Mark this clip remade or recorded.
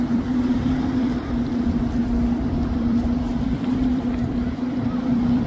remade